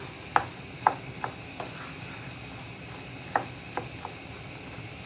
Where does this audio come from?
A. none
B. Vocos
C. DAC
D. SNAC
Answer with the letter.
A